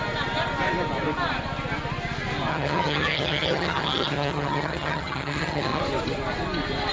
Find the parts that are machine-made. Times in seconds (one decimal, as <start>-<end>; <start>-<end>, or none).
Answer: 2.5-5.8